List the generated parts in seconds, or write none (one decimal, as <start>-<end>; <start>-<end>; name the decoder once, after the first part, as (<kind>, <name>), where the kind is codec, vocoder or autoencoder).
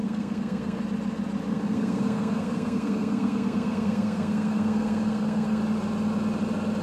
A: 0.0-0.8 (codec, SNAC); 1.5-5.6